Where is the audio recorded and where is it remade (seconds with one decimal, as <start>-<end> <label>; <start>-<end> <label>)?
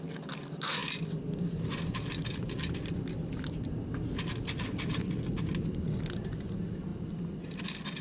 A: 0.0-8.0 recorded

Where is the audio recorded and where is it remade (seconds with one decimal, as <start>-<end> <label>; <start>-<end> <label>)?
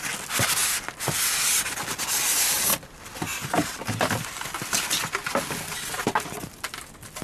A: 0.0-3.3 recorded; 3.3-3.8 remade; 3.8-7.2 recorded